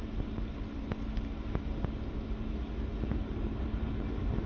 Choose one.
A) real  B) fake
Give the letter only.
A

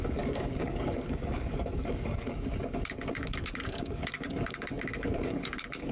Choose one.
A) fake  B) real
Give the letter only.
A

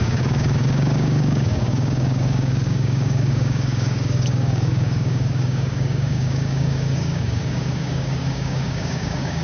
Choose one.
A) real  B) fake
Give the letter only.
B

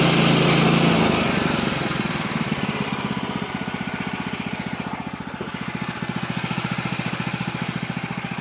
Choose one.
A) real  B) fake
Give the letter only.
A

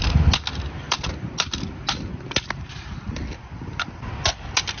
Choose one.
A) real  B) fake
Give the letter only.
A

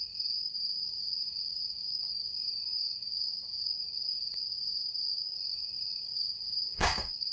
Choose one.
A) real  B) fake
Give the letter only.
B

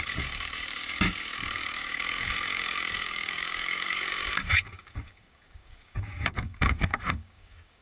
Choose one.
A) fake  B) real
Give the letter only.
A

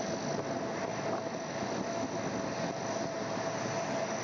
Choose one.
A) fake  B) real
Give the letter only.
B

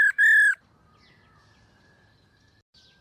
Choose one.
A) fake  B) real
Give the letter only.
B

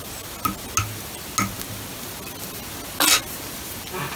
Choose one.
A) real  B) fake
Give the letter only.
A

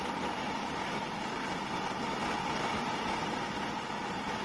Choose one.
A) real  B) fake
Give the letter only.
A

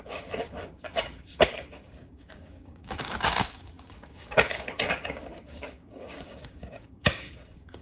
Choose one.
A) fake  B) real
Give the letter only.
A